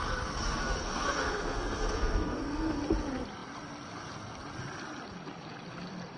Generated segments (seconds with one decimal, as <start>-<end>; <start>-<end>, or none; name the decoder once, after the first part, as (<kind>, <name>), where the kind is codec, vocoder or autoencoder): 0.6-2.8 (codec, SNAC)